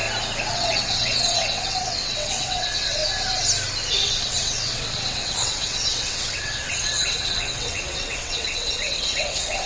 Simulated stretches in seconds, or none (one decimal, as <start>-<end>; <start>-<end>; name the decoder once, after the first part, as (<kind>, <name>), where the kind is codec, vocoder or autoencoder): 0.5-3.0 (vocoder, WaveNeXt); 3.9-9.7